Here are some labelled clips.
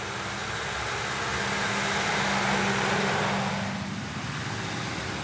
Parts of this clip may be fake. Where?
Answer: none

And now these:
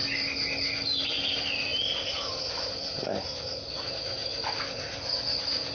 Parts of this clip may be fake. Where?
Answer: none

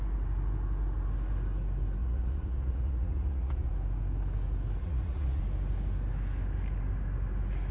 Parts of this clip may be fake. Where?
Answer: 2.0-3.7 (vocoder, Vocos); 4.8-5.4

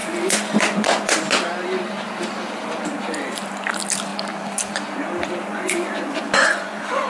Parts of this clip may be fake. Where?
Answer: 0.0-1.1 (vocoder, Vocos); 5.5-7.1

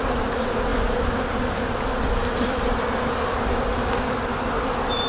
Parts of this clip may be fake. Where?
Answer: none

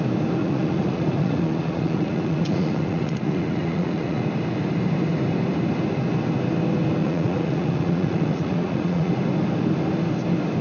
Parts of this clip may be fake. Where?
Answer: 0.4-4.2 (vocoder, Vocos); 7.0-9.1